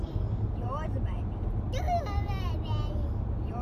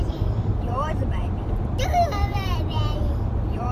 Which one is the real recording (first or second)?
first